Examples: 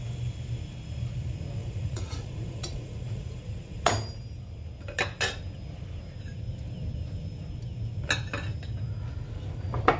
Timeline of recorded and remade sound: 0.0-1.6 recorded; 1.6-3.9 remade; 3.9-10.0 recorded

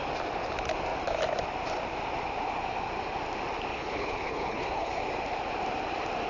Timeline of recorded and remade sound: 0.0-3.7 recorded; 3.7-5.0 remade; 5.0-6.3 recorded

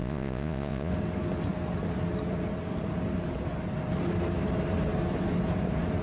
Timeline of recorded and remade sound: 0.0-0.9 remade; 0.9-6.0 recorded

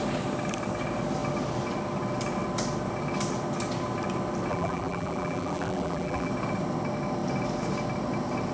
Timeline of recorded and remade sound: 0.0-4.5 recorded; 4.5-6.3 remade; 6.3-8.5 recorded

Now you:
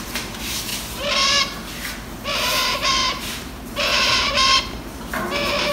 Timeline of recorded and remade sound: 0.0-0.7 remade; 0.7-2.6 recorded; 2.6-5.7 remade